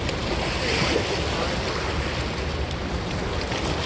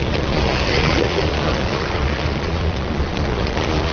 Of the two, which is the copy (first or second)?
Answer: second